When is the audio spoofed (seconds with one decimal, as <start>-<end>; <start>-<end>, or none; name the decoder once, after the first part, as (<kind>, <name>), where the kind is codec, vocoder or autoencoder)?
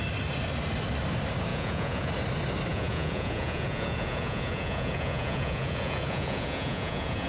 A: 1.5-2.1 (vocoder, Vocos); 2.7-7.3